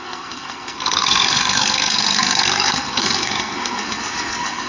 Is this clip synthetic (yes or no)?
yes